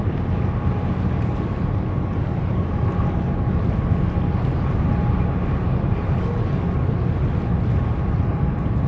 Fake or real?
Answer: real